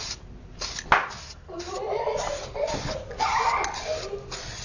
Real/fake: real